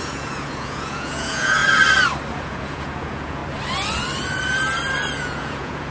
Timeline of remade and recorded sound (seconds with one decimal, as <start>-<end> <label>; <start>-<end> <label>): 0.0-1.6 remade; 1.6-2.3 recorded; 2.3-3.4 remade; 3.4-5.2 recorded; 5.2-5.9 remade